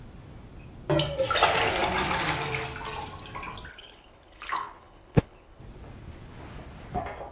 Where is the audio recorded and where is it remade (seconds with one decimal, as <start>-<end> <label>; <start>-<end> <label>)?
0.0-3.7 recorded; 3.7-5.6 remade; 5.6-7.3 recorded